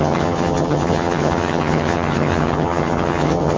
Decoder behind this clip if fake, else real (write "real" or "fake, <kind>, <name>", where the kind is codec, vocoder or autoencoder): fake, vocoder, HiFi-GAN